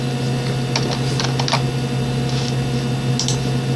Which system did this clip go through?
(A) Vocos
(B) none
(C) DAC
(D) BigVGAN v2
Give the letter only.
B